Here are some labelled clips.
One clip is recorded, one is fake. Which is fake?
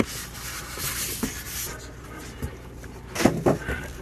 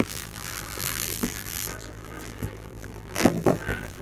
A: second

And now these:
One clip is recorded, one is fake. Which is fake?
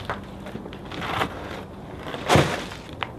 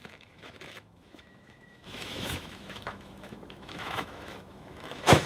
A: second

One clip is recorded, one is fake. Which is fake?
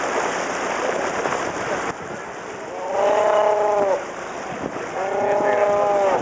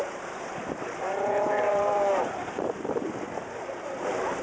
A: second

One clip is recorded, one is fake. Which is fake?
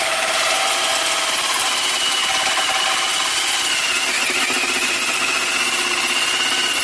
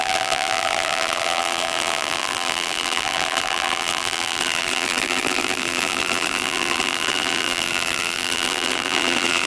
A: second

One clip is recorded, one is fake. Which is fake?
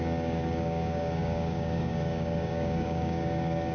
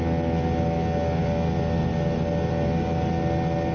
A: first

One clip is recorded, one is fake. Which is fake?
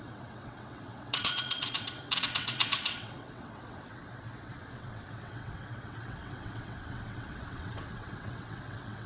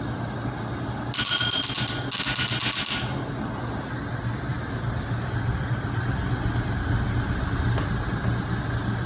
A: first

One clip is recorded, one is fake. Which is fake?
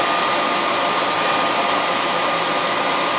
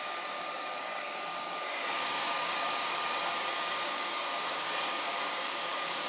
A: second